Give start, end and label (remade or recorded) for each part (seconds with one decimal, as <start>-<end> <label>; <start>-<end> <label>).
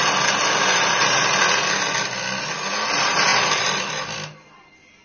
0.0-5.0 recorded